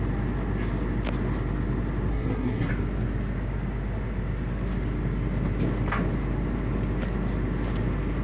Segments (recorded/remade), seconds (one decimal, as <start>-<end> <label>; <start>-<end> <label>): 0.0-2.1 recorded; 2.1-2.7 remade; 2.7-8.2 recorded